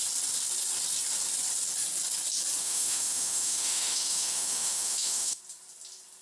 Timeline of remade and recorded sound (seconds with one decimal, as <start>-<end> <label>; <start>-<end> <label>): 0.0-2.6 recorded; 2.6-5.4 remade; 5.4-6.2 recorded